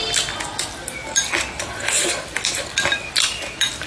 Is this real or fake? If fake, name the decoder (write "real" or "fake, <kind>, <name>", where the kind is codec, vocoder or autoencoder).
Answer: real